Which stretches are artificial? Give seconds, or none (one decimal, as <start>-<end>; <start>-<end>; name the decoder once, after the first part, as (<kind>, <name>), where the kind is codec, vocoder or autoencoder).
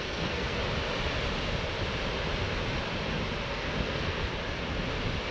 0.0-0.6 (codec, SNAC); 3.5-4.3